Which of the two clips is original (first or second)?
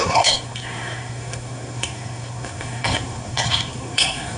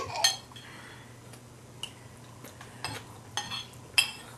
second